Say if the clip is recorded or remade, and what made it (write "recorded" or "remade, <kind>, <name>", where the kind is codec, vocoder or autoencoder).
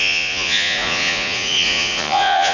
remade, vocoder, Vocos